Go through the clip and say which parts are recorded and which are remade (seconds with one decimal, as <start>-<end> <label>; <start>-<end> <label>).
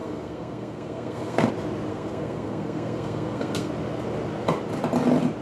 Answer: 0.0-1.5 remade; 1.5-1.9 recorded; 1.9-3.7 remade; 3.7-5.4 recorded